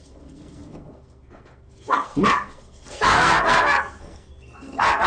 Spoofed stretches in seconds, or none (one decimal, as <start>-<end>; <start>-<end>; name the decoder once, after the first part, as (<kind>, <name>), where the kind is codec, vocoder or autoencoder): 0.0-5.1 (codec, SNAC)